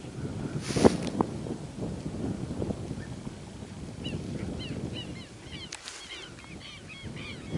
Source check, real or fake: real